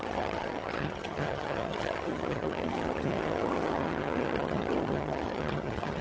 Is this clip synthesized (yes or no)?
yes